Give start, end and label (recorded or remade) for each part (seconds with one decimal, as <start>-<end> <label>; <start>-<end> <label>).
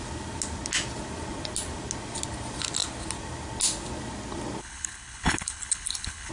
0.0-4.6 recorded; 4.6-6.3 remade